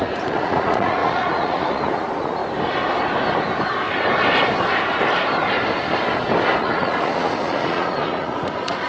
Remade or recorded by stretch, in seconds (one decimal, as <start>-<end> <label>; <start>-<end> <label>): 0.0-2.4 remade; 2.4-6.6 recorded; 6.6-8.9 remade